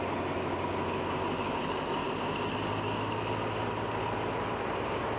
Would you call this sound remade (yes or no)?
no